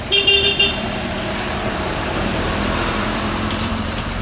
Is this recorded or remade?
remade